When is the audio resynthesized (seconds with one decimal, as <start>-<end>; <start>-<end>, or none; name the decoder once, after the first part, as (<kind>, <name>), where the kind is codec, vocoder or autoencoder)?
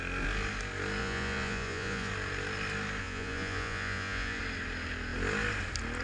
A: 1.0-2.1 (vocoder, Vocos); 3.0-4.4